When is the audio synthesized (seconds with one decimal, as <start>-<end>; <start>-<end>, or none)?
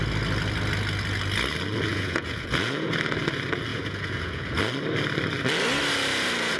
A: 1.9-2.9; 3.7-4.6